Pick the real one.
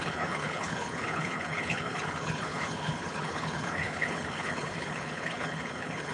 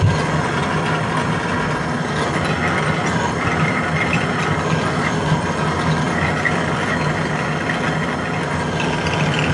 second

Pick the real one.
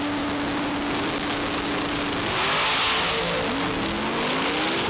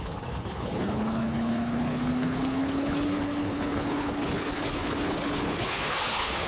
first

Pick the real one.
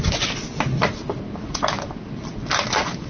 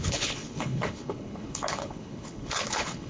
first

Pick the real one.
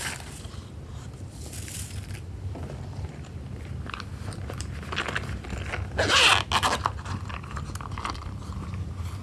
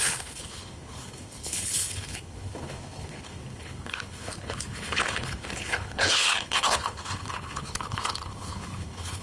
first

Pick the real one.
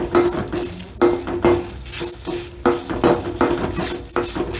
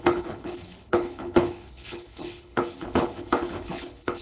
first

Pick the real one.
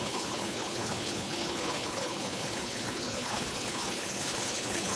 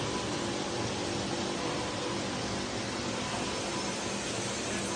second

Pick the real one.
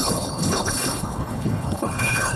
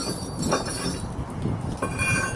second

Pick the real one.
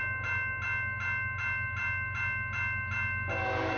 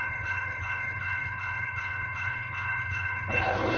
first